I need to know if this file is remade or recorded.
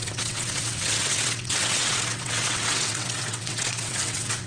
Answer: remade